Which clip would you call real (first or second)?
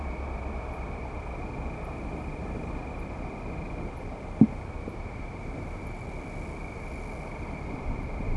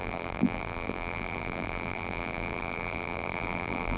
first